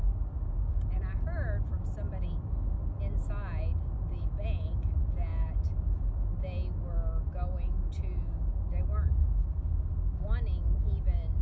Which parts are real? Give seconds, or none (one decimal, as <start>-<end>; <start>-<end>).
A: 0.0-11.4